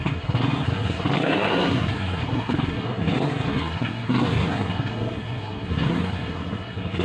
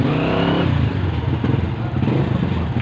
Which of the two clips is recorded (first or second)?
second